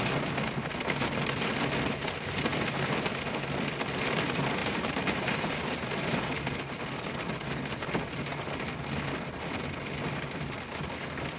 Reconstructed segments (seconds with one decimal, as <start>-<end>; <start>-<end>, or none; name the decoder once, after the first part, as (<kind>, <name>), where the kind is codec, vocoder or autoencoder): 4.6-6.2 (vocoder, BigVGAN v2)